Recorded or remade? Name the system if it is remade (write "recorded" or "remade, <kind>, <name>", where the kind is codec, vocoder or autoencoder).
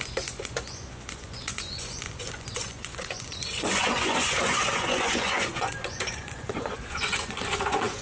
remade, vocoder, Vocos